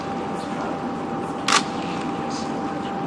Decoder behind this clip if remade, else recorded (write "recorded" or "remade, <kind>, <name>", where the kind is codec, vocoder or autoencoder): recorded